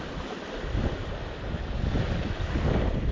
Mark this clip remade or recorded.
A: recorded